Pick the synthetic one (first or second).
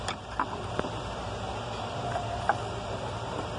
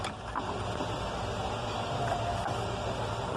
first